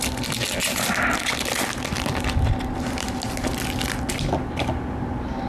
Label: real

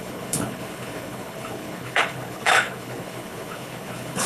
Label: fake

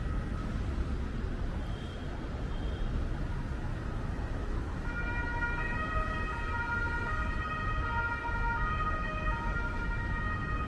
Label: real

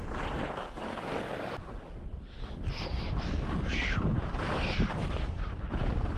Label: real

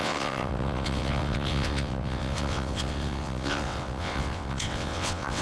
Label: fake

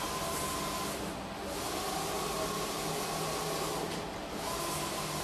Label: real